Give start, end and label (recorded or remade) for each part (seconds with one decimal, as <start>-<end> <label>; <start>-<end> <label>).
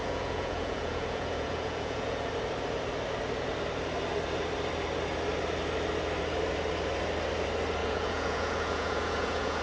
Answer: 0.0-2.3 remade; 2.3-7.8 recorded; 7.8-9.6 remade